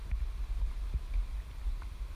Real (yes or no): yes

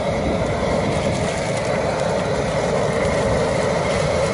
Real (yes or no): yes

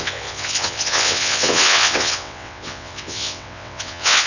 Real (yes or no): no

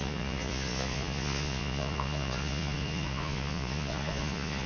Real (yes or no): no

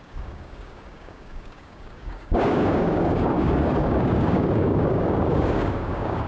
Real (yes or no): no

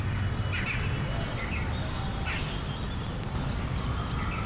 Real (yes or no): yes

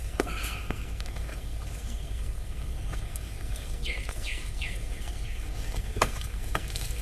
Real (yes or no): no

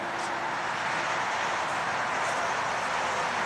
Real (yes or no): yes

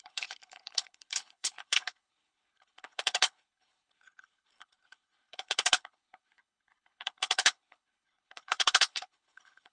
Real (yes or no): no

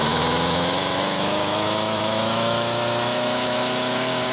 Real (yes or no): no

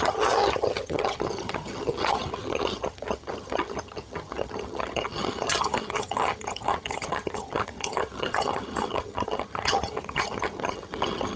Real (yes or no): no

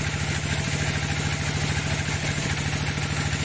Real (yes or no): yes